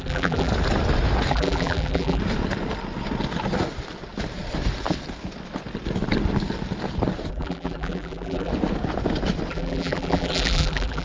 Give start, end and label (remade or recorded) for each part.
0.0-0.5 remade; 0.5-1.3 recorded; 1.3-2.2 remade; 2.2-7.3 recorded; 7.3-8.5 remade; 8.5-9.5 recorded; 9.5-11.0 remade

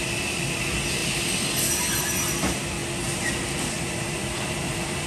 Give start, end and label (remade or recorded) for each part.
0.0-2.8 remade; 2.8-3.6 recorded; 3.6-5.1 remade

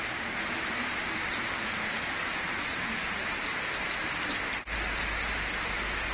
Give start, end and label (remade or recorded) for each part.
0.0-1.0 recorded; 1.0-4.5 remade; 4.5-6.1 recorded

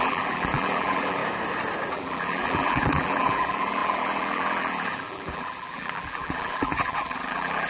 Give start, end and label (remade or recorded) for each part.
0.0-1.2 remade; 1.2-1.9 recorded; 1.9-7.7 remade

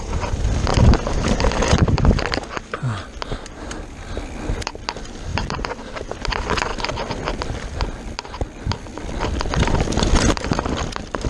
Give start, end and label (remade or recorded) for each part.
0.0-0.7 remade; 0.7-4.5 recorded; 4.5-6.7 remade; 6.7-7.5 recorded; 7.5-11.3 remade